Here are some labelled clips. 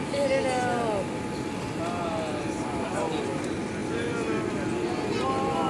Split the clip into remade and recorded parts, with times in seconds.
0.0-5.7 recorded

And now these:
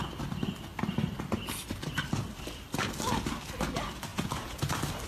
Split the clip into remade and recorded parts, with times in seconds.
0.0-4.1 recorded; 4.1-4.6 remade; 4.6-5.1 recorded